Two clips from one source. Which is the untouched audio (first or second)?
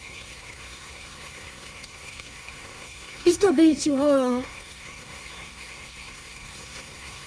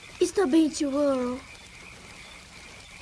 second